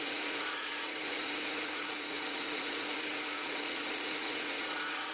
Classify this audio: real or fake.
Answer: fake